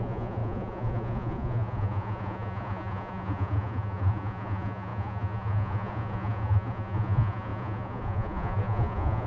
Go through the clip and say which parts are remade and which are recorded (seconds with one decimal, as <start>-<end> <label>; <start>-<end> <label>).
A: 0.0-9.3 remade